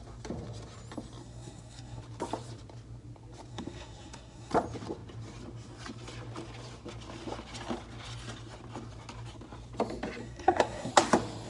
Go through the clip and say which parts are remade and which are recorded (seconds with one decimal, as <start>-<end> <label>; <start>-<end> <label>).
0.0-1.2 recorded; 1.2-2.0 remade; 2.0-3.5 recorded; 3.5-4.5 remade; 4.5-10.2 recorded; 10.2-10.9 remade; 10.9-11.5 recorded